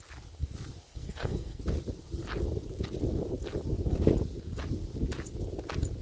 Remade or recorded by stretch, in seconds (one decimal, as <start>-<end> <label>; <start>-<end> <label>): 0.0-0.9 recorded; 0.9-1.6 remade; 1.6-6.0 recorded